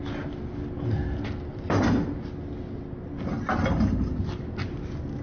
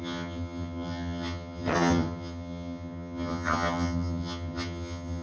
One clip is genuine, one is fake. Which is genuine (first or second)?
first